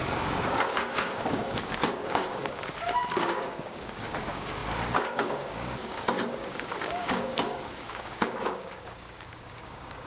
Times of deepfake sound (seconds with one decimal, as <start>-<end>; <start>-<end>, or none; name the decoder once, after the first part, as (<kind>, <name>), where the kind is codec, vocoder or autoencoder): 0.0-10.1 (codec, DAC)